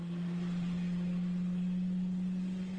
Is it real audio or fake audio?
real